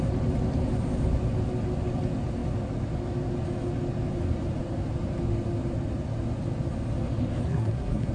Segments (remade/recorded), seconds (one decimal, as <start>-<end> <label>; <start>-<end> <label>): 0.0-7.4 recorded; 7.4-8.1 remade